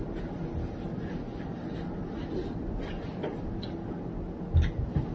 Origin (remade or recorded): recorded